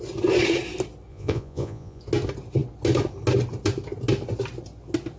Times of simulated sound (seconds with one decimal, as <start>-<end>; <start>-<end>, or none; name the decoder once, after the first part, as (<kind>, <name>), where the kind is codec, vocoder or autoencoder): 1.1-2.0 (vocoder, Vocos)